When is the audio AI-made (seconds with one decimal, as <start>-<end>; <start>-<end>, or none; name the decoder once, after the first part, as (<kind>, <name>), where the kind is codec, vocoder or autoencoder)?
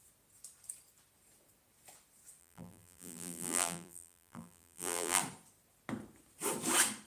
2.4-5.2 (vocoder, BigVGAN v2)